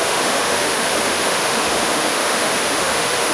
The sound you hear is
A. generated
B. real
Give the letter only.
A